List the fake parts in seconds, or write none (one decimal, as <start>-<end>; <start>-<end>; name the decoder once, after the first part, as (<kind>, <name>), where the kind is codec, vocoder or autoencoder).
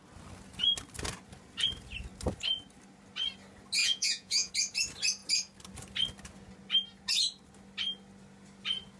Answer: 3.8-4.5 (vocoder, Vocos)